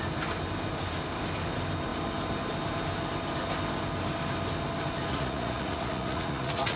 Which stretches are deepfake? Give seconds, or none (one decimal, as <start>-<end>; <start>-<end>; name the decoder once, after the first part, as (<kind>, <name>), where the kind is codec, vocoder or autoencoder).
5.1-6.8 (vocoder, Vocos)